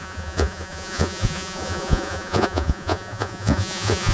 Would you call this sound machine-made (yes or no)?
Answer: yes